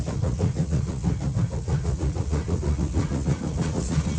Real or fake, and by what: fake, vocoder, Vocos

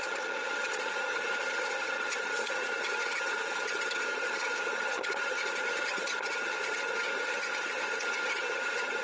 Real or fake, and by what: fake, vocoder, HiFi-GAN